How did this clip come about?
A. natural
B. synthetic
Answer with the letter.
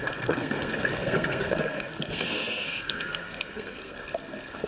B